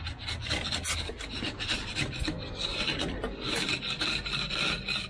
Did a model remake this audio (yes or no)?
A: no